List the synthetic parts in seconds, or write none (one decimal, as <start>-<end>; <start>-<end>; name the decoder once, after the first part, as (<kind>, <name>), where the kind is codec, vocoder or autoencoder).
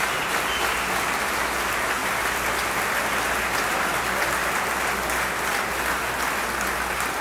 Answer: none